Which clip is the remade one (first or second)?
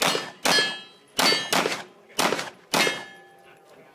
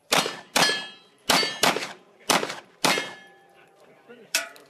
second